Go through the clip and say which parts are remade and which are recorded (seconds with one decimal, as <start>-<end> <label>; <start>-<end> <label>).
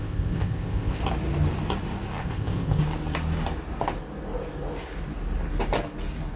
0.0-1.0 remade; 1.0-2.2 recorded; 2.2-2.8 remade; 2.8-6.4 recorded